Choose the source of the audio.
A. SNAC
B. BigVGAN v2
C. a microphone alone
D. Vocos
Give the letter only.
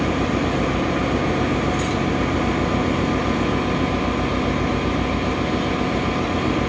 C